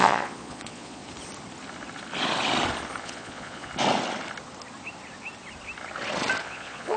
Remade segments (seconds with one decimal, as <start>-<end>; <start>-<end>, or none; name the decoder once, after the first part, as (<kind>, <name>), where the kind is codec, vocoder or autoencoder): 0.0-1.0 (vocoder, Vocos); 3.0-3.7; 6.4-7.0